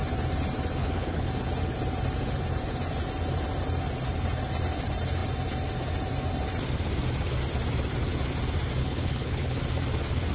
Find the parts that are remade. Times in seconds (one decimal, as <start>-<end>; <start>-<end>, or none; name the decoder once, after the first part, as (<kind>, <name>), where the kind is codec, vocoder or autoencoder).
0.8-1.3 (codec, HILCodec); 8.8-9.6